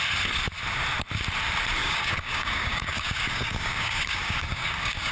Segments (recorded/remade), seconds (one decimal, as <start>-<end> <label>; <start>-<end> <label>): 0.0-1.8 recorded; 1.8-5.1 remade